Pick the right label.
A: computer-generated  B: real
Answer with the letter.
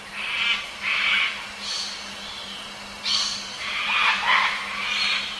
B